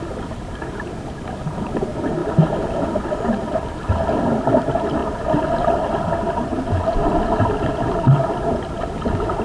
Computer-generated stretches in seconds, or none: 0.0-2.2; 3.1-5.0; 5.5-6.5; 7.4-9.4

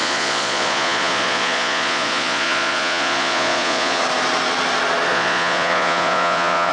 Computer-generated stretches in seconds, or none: 0.0-4.0; 5.1-6.7

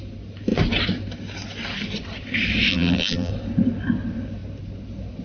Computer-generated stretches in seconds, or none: 2.7-3.3

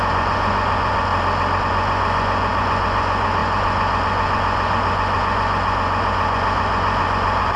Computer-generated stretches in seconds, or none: 0.0-1.1; 1.6-7.6

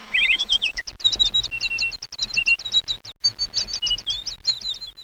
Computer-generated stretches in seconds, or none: 0.0-0.8

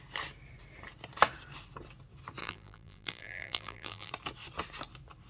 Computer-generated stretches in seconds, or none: 2.4-4.1

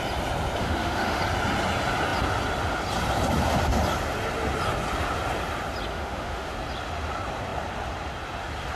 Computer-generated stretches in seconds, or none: 0.6-1.2; 5.9-6.5

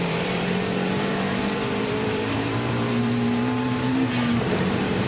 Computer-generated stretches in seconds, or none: 0.0-3.9; 4.4-5.1